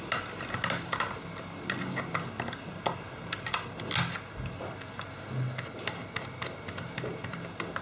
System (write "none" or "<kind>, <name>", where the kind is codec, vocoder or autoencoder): none